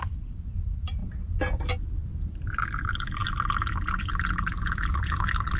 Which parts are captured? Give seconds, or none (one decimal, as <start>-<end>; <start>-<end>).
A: 0.0-5.6

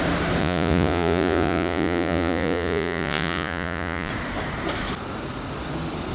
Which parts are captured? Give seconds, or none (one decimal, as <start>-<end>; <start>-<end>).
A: 0.0-0.4; 4.1-6.1

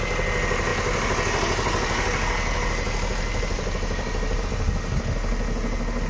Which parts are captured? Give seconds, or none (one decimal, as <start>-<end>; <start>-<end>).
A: 0.0-6.1